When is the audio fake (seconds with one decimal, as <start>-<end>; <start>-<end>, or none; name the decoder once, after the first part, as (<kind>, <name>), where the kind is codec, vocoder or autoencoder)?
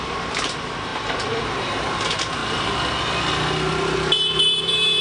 0.0-2.4 (vocoder, BigVGAN v2); 3.7-5.0